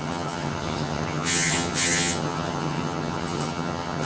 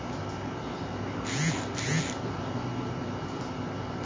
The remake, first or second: first